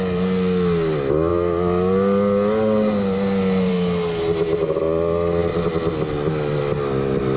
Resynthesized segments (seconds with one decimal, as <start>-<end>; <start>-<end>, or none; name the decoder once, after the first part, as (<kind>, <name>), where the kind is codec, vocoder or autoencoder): none